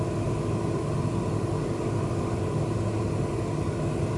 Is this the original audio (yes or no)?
yes